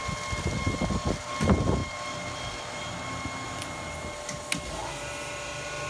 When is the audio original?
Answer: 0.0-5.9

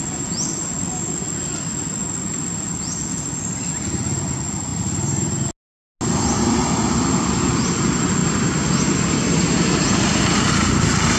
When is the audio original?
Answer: 0.0-4.7; 5.3-8.2; 10.5-11.2

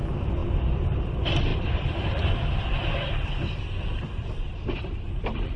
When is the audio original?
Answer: 0.0-1.5; 4.5-5.6

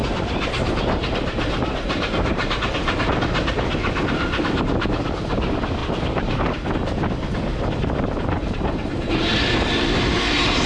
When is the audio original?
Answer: 3.2-5.8; 6.7-7.5